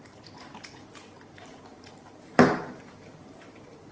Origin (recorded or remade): remade